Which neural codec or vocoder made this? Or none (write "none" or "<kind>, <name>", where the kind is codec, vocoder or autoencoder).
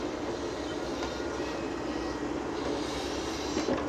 none